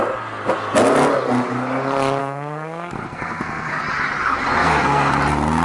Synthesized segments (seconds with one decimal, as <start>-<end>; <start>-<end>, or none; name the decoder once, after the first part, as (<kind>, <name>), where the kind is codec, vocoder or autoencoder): 2.2-3.8 (codec, SNAC); 4.6-5.1